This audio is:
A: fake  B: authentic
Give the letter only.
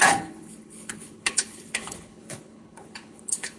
A